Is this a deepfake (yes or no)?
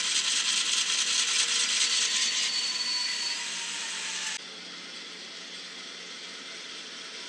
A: no